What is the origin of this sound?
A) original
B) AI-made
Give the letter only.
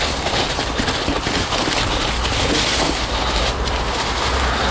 A